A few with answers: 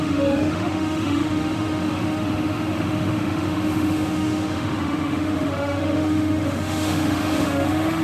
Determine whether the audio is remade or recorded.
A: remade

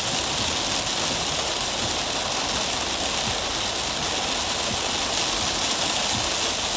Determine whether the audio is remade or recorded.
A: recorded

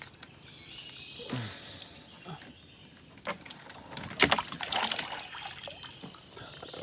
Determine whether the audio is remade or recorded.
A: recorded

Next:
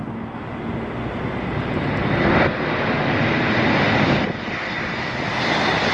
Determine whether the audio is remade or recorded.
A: recorded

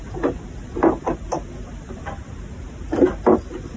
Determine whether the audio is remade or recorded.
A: recorded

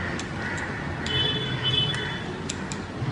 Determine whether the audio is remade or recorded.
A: recorded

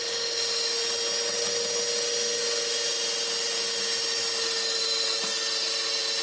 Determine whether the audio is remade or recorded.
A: recorded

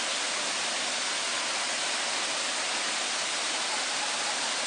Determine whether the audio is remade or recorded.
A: recorded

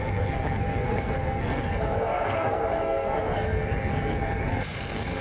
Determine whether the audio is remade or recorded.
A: remade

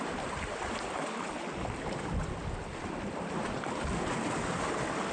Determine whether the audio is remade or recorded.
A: recorded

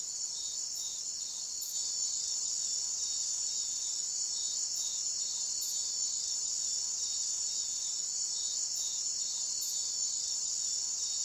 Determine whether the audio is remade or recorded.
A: recorded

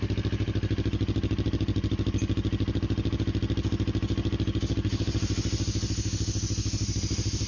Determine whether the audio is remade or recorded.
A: recorded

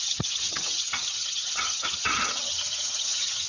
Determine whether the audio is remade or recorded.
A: remade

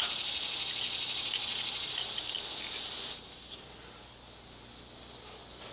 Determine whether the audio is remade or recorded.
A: recorded